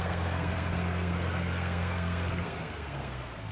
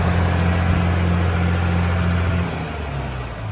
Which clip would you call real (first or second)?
second